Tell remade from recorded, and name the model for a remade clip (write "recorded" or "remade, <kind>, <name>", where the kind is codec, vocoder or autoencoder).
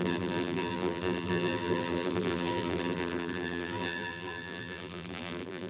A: remade, vocoder, BigVGAN v2